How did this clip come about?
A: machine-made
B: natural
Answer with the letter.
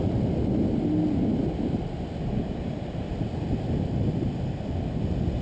B